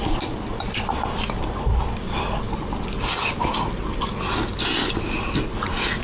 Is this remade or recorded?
recorded